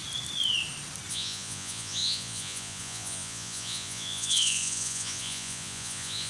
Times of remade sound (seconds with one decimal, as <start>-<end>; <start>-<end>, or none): 1.1-6.3